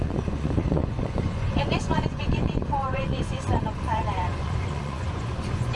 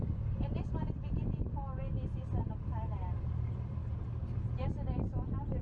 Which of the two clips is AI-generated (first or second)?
first